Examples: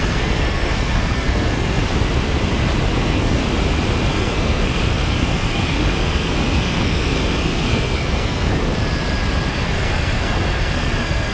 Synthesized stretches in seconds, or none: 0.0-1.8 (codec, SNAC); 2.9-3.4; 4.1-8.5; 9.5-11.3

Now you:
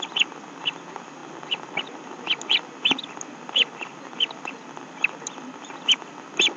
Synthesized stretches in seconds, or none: none

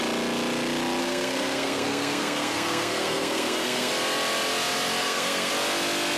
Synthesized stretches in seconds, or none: 1.0-3.9 (codec, SNAC); 5.0-5.5

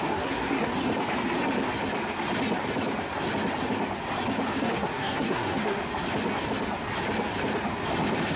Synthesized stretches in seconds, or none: 0.0-0.7 (codec, SNAC); 4.6-5.8